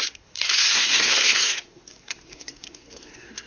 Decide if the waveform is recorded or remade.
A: remade